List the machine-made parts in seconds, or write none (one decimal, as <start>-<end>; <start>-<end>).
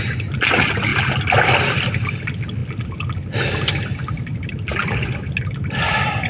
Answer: none